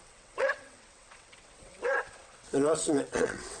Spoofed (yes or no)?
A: yes